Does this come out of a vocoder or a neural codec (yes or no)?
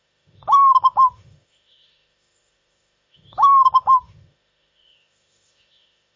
yes